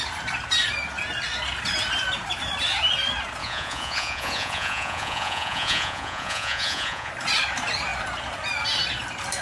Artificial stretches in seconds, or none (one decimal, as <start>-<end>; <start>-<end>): 3.4-7.1